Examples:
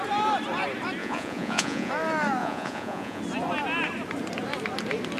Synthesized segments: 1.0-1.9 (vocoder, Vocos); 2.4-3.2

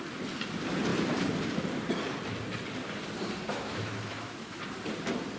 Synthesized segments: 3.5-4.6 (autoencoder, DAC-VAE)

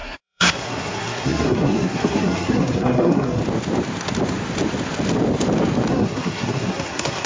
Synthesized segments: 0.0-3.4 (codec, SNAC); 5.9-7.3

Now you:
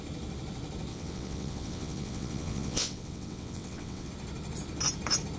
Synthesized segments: 0.9-4.1 (vocoder, WaveNeXt)

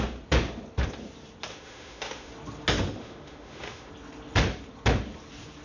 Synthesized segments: 1.5-2.3 (autoencoder, DAC-VAE); 3.0-3.9

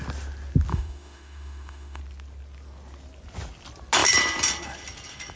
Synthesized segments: 0.7-2.0 (autoencoder, DAC-VAE)

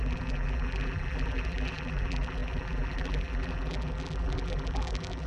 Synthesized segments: 0.0-5.3 (vocoder, BigVGAN v2)

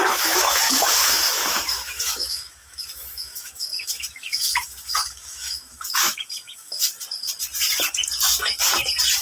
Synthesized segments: 0.0-6.9 (autoencoder, DAC-VAE)